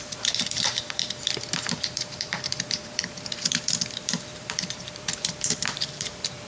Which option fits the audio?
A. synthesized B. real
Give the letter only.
A